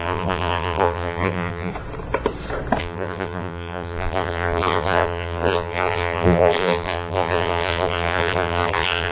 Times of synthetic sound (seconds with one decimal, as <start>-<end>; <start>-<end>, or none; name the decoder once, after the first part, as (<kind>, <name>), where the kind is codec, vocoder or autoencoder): 0.0-1.7 (vocoder, BigVGAN v2); 2.8-9.1